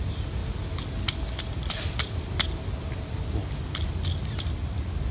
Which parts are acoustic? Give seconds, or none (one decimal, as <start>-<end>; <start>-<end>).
0.0-5.1